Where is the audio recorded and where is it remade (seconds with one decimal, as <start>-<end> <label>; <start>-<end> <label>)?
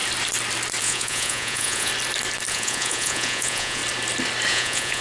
0.0-0.8 recorded; 0.8-1.9 remade; 1.9-2.5 recorded; 2.5-3.8 remade; 3.8-4.5 recorded; 4.5-5.0 remade